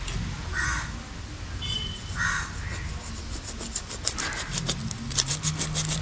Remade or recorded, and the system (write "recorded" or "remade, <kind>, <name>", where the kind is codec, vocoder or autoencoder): recorded